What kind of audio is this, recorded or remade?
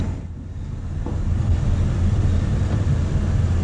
recorded